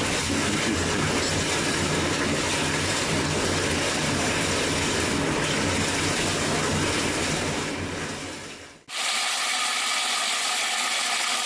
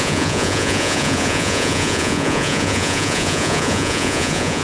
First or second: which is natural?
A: first